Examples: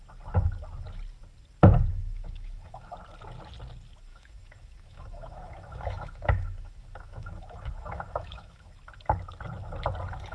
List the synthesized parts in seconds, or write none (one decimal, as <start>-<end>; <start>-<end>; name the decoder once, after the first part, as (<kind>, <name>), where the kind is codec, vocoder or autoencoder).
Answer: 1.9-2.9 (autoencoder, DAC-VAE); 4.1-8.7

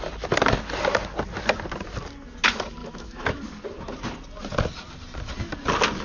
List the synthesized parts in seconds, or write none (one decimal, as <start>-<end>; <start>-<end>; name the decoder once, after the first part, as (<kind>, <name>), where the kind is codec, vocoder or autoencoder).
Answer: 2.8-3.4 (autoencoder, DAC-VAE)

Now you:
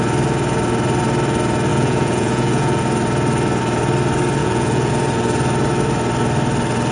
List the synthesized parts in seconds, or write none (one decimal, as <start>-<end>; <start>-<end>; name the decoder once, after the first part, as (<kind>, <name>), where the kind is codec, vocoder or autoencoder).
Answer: 1.7-2.8 (vocoder, Vocos); 4.4-4.9